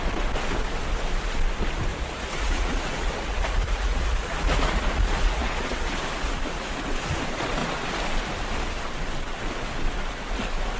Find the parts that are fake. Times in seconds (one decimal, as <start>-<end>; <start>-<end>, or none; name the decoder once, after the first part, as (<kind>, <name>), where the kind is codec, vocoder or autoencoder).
1.9-6.9 (vocoder, Vocos)